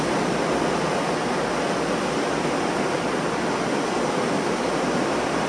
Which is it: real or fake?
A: real